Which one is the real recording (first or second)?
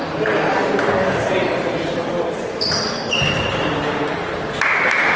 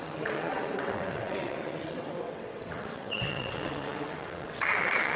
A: first